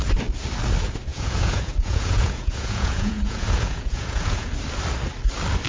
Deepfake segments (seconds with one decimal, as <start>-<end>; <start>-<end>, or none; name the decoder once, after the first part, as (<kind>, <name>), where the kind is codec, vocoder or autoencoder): 1.1-4.5 (vocoder, Vocos)